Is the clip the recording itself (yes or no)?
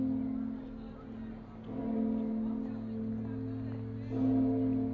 yes